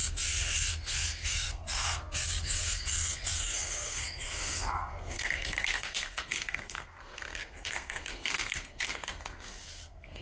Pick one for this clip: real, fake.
fake